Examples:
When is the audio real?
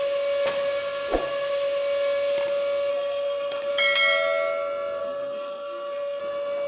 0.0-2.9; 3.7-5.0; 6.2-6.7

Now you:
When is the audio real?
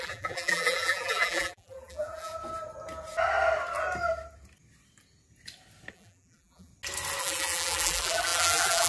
2.3-5.9; 6.7-7.2